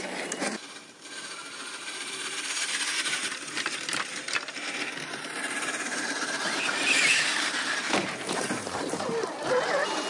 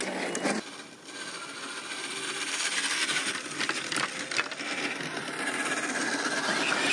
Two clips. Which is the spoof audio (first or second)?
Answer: first